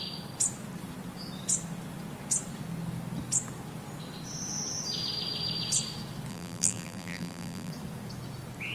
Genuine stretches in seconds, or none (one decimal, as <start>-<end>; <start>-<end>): 0.0-6.3; 7.7-8.7